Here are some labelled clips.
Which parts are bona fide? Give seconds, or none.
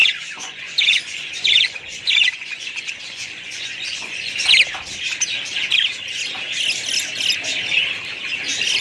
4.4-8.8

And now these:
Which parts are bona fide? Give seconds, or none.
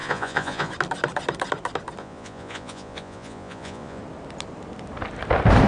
0.7-2.0; 4.0-5.7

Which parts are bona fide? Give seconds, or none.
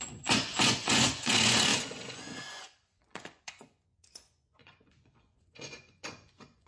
none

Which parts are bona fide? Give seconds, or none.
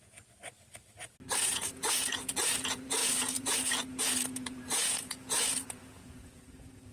0.4-1.4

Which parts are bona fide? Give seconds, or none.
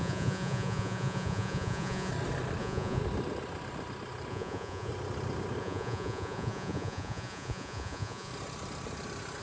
2.1-2.6; 3.0-4.3; 4.9-5.6; 8.3-9.4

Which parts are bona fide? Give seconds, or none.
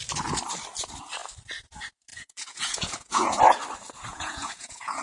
0.0-2.1; 3.4-4.1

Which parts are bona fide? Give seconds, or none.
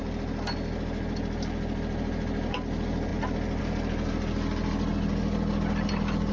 0.0-6.3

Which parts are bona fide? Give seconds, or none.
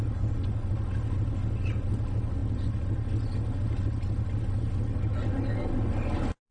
0.0-6.5